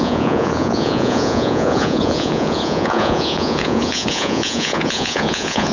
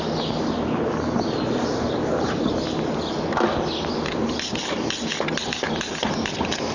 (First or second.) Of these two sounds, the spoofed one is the first